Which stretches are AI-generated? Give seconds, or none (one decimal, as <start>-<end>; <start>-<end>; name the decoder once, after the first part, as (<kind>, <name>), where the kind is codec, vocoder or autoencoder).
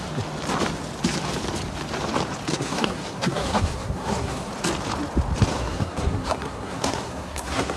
2.5-4.5 (codec, SNAC); 5.5-7.8